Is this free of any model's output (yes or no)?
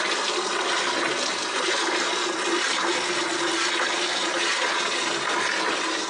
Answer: yes